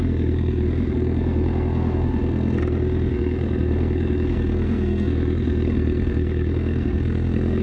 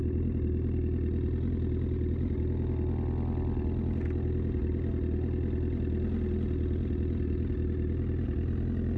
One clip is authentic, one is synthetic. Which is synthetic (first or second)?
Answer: first